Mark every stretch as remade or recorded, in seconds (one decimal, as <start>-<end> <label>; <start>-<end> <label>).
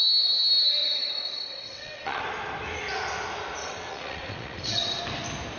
0.0-0.8 recorded; 0.8-2.2 remade; 2.2-3.6 recorded; 3.6-5.0 remade; 5.0-5.6 recorded